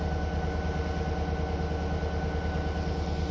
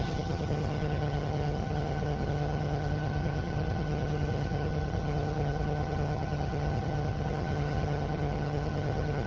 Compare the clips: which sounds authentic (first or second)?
first